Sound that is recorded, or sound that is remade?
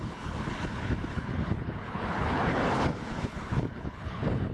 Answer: remade